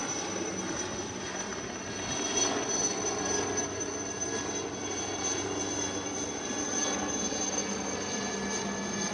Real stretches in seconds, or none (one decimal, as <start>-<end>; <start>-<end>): 0.0-9.1